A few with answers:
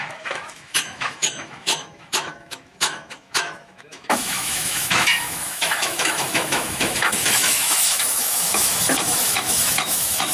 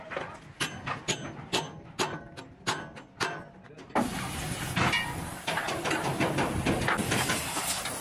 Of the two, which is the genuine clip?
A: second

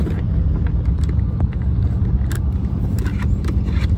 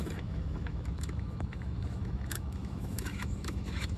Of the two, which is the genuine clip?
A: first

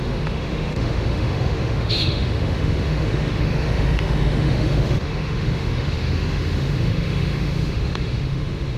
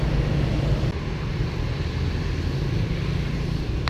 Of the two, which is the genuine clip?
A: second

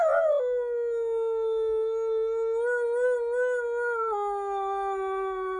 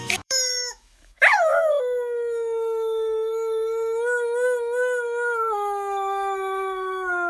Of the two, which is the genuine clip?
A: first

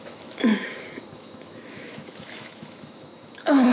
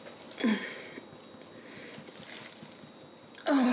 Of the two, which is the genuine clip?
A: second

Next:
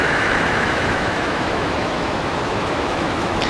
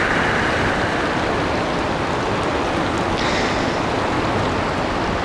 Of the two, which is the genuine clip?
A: second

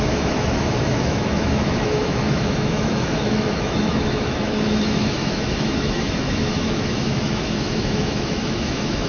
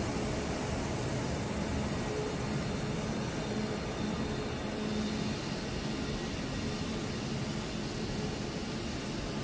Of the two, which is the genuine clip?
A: second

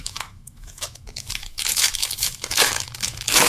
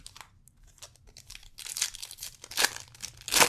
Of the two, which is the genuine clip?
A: second